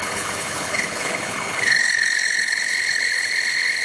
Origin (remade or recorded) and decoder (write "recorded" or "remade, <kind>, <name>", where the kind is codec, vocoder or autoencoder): remade, codec, HILCodec